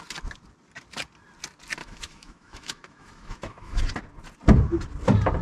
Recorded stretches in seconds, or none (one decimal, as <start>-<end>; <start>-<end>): 0.0-1.8; 3.8-5.4